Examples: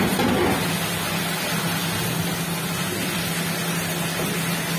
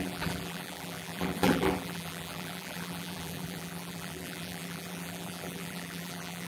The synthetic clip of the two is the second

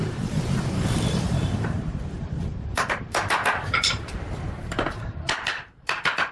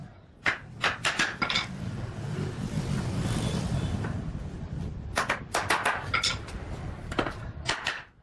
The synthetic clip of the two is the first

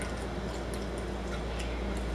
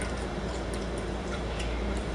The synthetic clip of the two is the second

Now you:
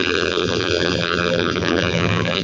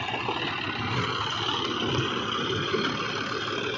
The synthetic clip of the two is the first